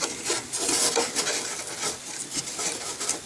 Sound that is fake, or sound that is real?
real